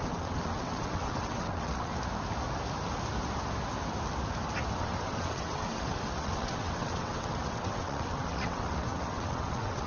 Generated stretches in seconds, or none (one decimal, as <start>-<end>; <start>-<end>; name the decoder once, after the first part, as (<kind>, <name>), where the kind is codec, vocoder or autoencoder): 0.0-1.9 (vocoder, WaveNeXt); 4.8-9.9